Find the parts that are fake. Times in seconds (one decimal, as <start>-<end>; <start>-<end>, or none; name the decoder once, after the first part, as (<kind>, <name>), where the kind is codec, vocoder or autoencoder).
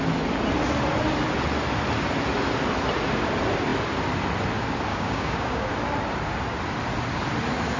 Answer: 4.9-5.7 (codec, DAC)